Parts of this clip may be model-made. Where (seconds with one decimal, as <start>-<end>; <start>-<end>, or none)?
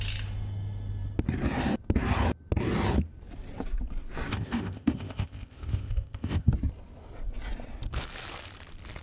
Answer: 4.3-6.5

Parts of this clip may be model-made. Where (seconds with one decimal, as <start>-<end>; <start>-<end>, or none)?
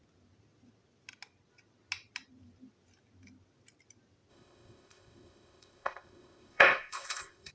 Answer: 4.3-7.5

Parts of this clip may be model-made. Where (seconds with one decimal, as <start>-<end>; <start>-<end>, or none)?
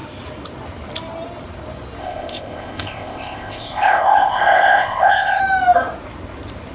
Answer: 2.0-5.4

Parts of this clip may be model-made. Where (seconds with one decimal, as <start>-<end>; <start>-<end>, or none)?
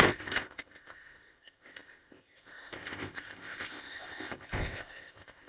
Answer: 0.0-5.5